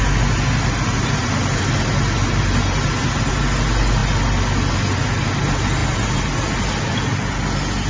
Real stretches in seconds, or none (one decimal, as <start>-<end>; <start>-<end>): 0.0-7.9